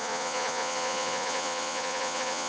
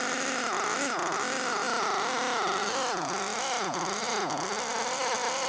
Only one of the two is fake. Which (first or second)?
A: first